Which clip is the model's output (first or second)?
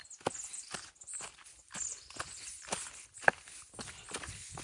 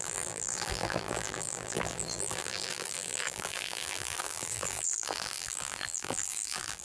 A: second